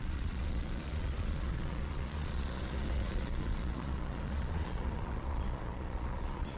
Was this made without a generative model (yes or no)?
no